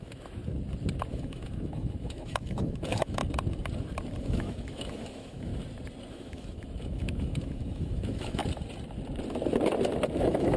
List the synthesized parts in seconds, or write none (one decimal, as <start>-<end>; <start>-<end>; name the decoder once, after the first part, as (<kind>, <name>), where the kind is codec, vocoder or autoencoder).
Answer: 0.0-0.4 (autoencoder, DAC-VAE); 1.1-3.2; 4.2-5.5; 6.1-8.4; 10.1-10.6